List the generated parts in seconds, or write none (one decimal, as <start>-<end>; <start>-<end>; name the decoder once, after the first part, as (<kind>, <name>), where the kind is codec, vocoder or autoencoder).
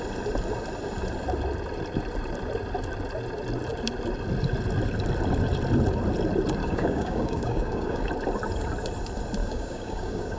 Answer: 6.6-8.1 (codec, DAC); 9.4-10.4